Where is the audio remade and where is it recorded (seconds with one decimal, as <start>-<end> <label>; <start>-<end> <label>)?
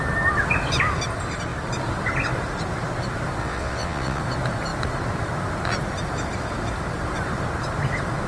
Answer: 0.0-3.4 recorded; 3.4-4.2 remade; 4.2-8.3 recorded